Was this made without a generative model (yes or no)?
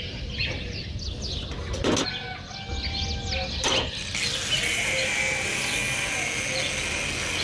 yes